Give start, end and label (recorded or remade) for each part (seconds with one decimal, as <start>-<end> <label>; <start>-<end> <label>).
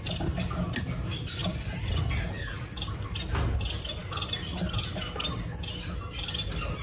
0.0-1.4 recorded; 1.4-2.0 remade; 2.0-6.8 recorded